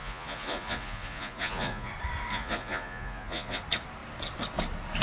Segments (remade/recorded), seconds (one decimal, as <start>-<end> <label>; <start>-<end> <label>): 0.0-1.9 remade; 1.9-2.3 recorded; 2.3-3.6 remade; 3.6-5.0 recorded